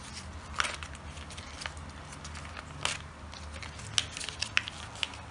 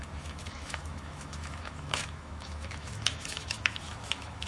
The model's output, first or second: second